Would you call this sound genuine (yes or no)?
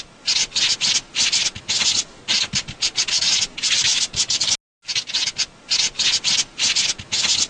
yes